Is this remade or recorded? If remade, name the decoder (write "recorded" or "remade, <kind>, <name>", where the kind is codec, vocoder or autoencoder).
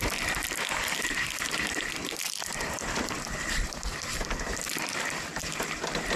recorded